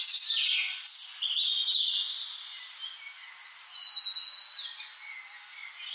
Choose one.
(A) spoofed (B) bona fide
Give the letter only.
B